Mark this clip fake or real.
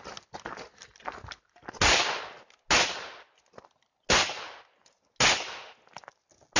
real